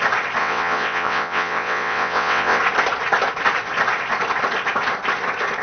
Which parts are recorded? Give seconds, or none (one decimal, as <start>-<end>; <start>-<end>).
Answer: 0.0-0.4; 2.6-5.6

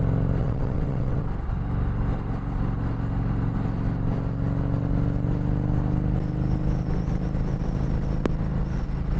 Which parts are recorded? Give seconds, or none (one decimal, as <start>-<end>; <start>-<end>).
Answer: 0.0-0.4; 1.2-9.2

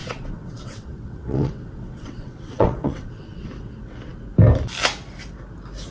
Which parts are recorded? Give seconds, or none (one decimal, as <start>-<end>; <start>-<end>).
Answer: 3.5-5.9

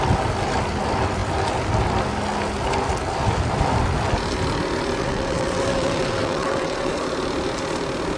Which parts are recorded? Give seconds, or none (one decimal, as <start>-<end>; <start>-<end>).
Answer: 0.0-5.0; 6.9-8.2

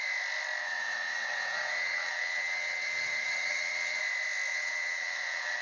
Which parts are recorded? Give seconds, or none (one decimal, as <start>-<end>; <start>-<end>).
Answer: 0.0-0.6; 4.0-4.5

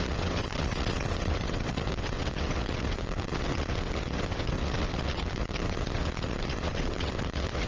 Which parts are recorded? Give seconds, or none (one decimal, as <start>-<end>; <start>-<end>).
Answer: none

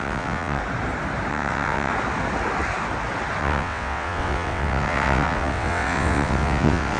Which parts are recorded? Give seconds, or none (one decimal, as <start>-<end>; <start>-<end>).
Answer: 0.6-1.3; 1.9-3.4

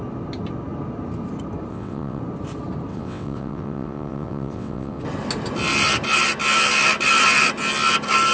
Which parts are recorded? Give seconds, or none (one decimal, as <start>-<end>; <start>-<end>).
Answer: 0.0-1.7; 2.2-2.9; 5.0-8.3